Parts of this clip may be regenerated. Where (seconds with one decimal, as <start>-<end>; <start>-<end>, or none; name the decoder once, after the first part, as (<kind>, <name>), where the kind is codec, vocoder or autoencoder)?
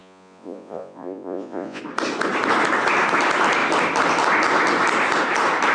0.0-1.8 (vocoder, Vocos)